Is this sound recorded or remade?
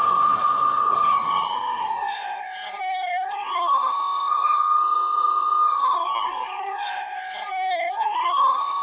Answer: remade